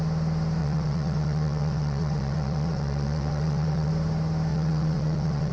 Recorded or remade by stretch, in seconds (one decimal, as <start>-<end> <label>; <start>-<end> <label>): 0.0-0.6 recorded; 0.6-3.9 remade; 3.9-4.5 recorded; 4.5-5.5 remade